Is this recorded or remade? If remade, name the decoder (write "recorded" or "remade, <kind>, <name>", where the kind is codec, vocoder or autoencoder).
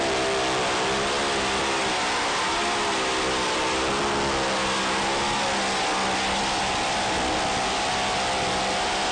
recorded